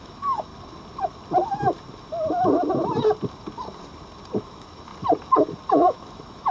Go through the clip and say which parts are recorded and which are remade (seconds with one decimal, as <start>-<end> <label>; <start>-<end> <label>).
0.0-0.5 remade; 0.5-4.4 recorded; 4.4-4.9 remade; 4.9-5.7 recorded; 5.7-6.5 remade